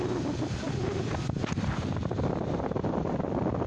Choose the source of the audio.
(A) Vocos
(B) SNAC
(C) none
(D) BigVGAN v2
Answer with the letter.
C